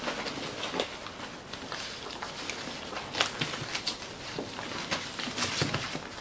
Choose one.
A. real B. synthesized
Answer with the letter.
A